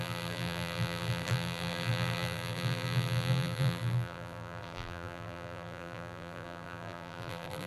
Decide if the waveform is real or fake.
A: fake